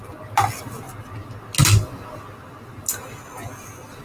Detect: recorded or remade recorded